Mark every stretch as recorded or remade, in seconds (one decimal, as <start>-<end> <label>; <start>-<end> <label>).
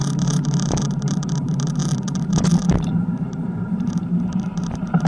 0.0-5.1 remade